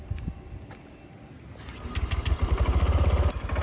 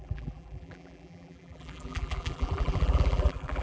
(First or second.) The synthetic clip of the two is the second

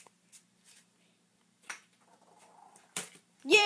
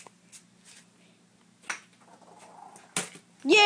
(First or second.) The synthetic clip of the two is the first